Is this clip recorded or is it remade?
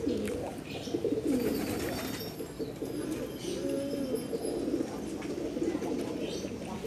recorded